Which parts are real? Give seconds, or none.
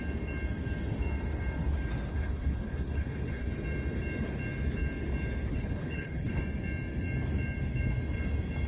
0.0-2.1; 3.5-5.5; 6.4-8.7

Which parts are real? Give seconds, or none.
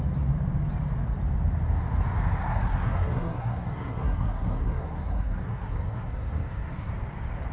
0.0-2.4; 6.9-7.5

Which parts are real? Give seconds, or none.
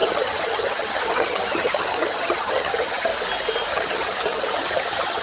3.1-3.7